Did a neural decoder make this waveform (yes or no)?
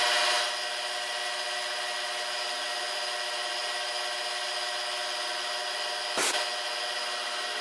no